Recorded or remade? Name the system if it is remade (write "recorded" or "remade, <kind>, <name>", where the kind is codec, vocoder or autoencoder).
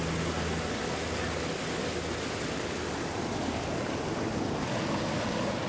recorded